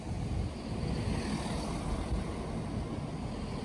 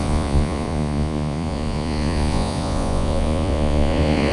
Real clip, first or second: first